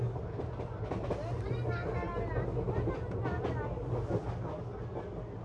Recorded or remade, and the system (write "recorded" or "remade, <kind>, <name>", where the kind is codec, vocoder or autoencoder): recorded